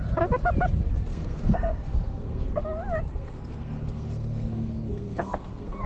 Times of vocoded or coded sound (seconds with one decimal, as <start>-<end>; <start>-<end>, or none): 1.1-2.6; 3.1-5.9